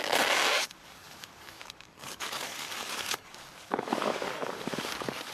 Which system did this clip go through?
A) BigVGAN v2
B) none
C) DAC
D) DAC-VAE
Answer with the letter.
C